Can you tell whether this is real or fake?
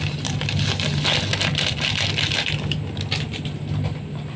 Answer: real